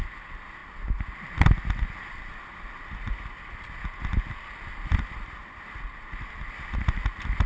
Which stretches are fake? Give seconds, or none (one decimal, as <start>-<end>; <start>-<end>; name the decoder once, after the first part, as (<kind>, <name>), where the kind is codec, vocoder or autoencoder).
none